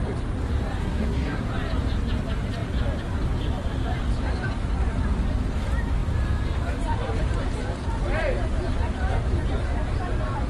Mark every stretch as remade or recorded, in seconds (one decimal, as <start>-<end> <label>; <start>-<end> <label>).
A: 0.0-0.8 recorded; 0.8-1.4 remade; 1.4-10.5 recorded